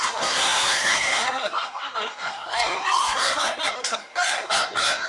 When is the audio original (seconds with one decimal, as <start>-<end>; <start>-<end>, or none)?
none